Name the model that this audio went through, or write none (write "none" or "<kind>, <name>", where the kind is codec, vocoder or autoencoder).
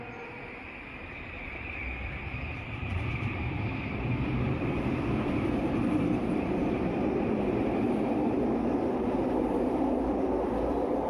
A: vocoder, BigVGAN v2